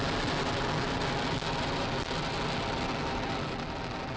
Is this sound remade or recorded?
recorded